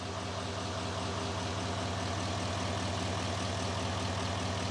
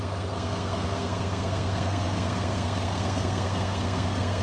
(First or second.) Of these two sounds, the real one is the first